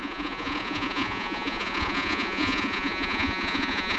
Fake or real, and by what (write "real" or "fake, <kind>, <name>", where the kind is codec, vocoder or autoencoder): fake, vocoder, Vocos